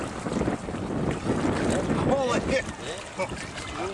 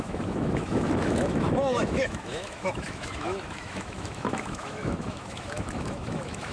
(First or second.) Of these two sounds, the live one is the first